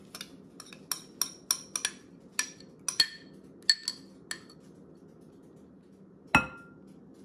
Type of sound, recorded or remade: recorded